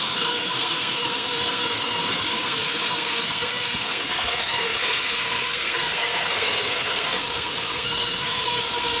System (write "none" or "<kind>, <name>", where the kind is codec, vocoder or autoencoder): codec, SNAC